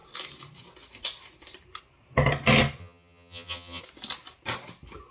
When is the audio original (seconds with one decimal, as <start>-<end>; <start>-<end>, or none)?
0.0-2.8; 3.8-5.1